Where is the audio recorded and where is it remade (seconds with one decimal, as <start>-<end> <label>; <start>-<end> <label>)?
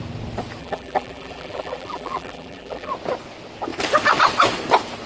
0.0-0.6 recorded; 0.6-2.9 remade; 2.9-5.1 recorded